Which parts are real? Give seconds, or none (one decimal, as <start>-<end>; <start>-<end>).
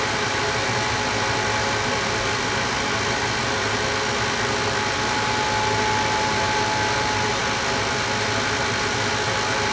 0.0-9.7